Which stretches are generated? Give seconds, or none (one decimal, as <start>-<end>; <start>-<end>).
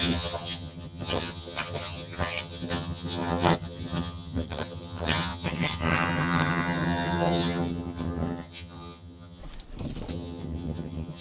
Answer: 0.0-9.4; 10.1-11.2